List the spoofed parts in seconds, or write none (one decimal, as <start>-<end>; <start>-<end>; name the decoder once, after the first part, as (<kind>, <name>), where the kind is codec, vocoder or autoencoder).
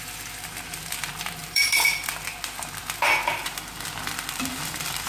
1.4-2.1 (vocoder, BigVGAN v2)